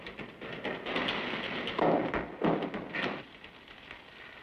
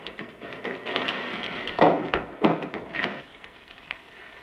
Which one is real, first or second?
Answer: first